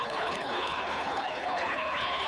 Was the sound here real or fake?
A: fake